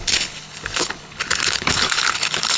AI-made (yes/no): yes